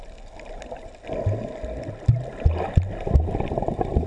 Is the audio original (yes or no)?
yes